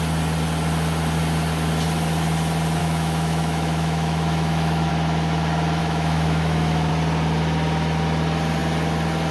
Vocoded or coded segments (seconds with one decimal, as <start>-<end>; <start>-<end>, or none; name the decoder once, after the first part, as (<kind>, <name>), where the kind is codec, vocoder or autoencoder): 2.8-4.9 (autoencoder, DAC-VAE); 5.8-6.9